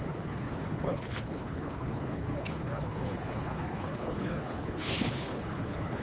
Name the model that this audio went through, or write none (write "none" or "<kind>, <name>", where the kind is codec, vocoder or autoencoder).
codec, HILCodec